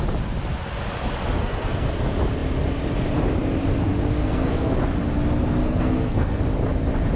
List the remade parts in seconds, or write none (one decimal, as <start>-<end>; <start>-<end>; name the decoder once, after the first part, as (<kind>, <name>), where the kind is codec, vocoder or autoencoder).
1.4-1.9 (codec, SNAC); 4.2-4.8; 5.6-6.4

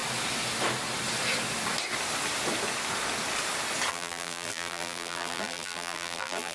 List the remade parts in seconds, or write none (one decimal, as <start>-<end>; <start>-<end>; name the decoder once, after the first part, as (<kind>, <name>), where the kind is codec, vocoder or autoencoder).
3.9-6.5 (vocoder, BigVGAN v2)

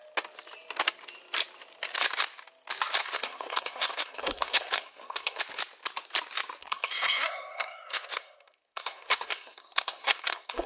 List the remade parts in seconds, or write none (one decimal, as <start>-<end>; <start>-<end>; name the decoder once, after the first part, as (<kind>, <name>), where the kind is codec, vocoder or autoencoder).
3.0-5.4 (codec, SNAC); 6.6-10.7

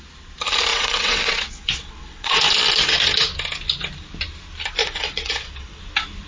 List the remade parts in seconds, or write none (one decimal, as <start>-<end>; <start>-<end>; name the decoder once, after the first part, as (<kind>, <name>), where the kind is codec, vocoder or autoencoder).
0.7-2.4 (vocoder, WaveNeXt); 4.8-5.8